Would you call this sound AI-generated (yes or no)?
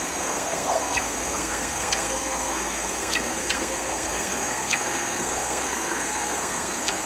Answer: yes